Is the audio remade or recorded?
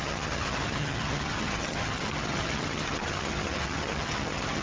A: remade